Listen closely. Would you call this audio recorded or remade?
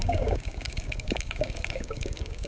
remade